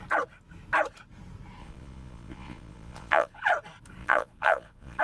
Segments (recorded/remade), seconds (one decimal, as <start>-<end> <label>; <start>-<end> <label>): 0.0-1.6 recorded; 1.6-3.5 remade; 3.5-4.0 recorded; 4.0-5.0 remade